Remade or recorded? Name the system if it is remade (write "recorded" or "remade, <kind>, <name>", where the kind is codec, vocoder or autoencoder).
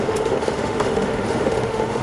remade, autoencoder, DAC-VAE